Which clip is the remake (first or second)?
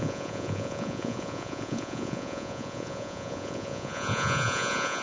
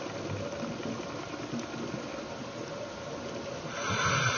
first